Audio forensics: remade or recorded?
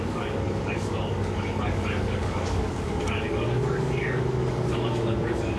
remade